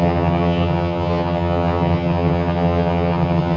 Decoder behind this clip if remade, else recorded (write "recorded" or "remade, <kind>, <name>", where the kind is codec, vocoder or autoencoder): remade, vocoder, HiFi-GAN